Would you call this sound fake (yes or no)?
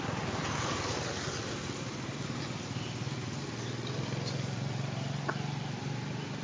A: no